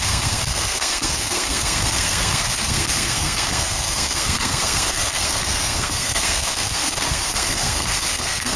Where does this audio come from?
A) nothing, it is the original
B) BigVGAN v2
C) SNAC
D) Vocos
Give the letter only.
C